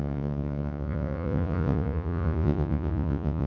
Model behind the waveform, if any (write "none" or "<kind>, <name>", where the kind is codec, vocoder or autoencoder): vocoder, Vocos